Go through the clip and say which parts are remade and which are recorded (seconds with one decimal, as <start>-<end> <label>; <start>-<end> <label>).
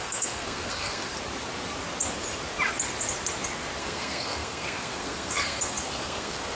0.0-1.1 remade; 1.1-3.8 recorded; 3.8-6.5 remade